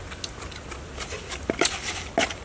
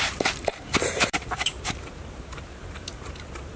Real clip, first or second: first